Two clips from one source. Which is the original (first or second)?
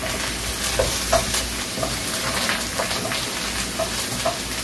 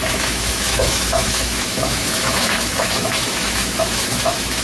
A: first